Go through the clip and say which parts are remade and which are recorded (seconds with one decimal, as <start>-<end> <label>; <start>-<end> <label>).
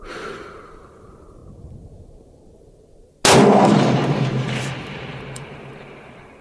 0.0-1.4 remade; 1.4-3.7 recorded; 3.7-6.4 remade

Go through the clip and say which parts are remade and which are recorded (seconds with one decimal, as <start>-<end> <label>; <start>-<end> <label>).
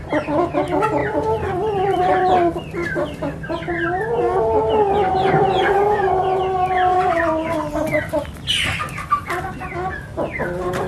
0.0-1.0 recorded; 1.0-3.4 remade; 3.4-5.6 recorded; 5.6-6.4 remade; 6.4-10.9 recorded